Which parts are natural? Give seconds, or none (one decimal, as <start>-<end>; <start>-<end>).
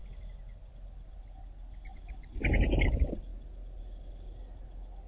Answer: 0.0-5.1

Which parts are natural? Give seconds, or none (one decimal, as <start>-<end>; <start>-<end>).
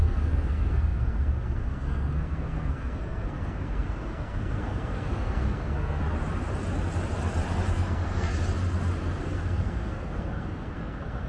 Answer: 6.0-7.7; 8.3-9.2